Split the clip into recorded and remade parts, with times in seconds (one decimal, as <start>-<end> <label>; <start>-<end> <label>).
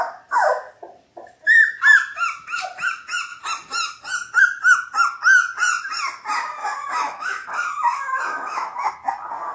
0.0-6.6 recorded; 6.6-8.9 remade; 8.9-9.5 recorded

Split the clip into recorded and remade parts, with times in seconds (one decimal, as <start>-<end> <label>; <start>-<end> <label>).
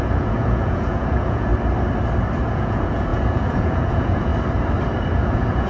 0.0-1.5 remade; 1.5-2.5 recorded; 2.5-4.3 remade; 4.3-5.1 recorded; 5.1-5.7 remade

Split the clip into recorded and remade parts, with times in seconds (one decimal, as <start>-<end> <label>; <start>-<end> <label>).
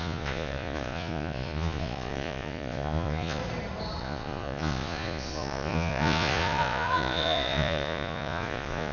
0.0-3.4 remade; 3.4-4.0 recorded; 4.0-8.9 remade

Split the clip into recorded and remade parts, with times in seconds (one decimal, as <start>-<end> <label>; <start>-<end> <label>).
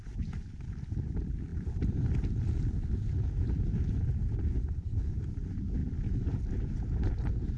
0.0-7.6 recorded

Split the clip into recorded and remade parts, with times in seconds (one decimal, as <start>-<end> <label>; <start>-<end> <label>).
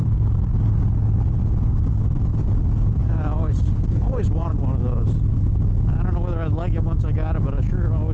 0.0-0.8 remade; 0.8-3.0 recorded; 3.0-4.5 remade; 4.5-8.1 recorded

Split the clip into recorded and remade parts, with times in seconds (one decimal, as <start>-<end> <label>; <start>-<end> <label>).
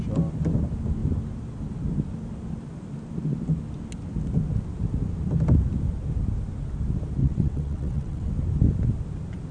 0.0-7.2 recorded; 7.2-8.3 remade; 8.3-9.5 recorded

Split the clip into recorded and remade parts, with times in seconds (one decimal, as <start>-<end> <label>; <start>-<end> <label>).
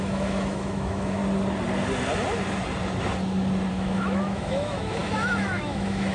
0.0-1.2 remade; 1.2-3.7 recorded; 3.7-6.1 remade